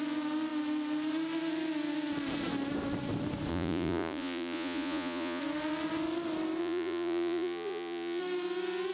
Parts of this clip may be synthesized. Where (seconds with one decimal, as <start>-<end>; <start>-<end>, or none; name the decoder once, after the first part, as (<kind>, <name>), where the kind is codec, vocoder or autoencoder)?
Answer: 3.5-5.4 (vocoder, Vocos); 6.6-8.2